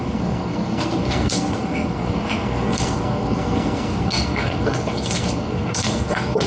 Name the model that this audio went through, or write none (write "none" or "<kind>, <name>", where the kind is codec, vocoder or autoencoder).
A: codec, SNAC